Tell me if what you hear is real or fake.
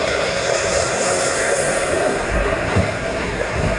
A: fake